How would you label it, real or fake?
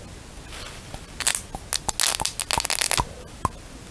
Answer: real